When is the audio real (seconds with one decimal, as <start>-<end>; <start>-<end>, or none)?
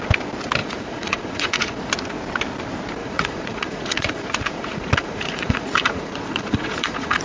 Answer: 0.0-0.6; 1.9-3.0